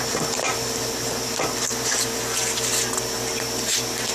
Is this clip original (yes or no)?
yes